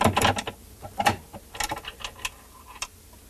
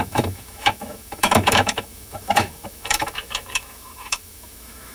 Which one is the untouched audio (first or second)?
first